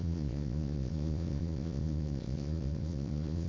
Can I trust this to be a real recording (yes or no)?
no